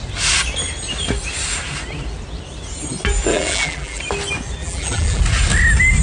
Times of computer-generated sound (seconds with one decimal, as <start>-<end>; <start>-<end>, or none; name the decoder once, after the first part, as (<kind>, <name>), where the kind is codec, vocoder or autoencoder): 3.3-4.0 (vocoder, BigVGAN v2); 4.6-5.2